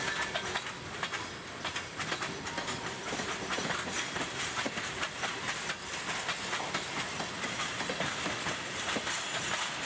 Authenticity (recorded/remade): recorded